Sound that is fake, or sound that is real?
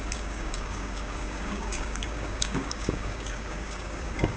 fake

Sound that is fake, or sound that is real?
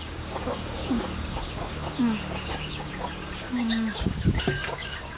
fake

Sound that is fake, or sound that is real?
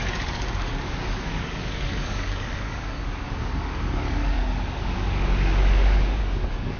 fake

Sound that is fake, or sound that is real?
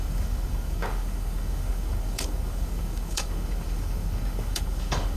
fake